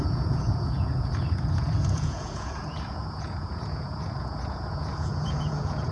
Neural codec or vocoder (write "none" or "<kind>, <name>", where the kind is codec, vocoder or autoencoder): vocoder, Vocos